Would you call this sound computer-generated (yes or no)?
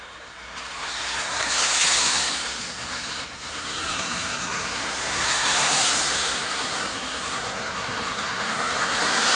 yes